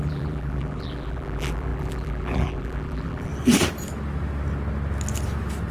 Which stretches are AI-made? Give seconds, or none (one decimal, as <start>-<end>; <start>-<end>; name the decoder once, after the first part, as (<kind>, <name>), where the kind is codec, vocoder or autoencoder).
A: 0.0-3.3 (vocoder, BigVGAN v2)